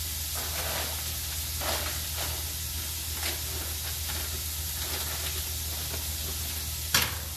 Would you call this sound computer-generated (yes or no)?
no